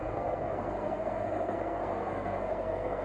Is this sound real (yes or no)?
no